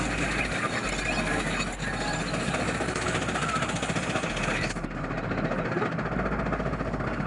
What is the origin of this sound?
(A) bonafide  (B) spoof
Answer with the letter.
A